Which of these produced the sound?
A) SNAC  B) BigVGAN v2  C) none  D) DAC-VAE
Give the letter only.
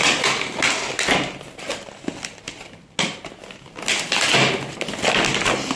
C